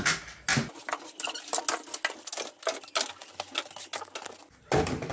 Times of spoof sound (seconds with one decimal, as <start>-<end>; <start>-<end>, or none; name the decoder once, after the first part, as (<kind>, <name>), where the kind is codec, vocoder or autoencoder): none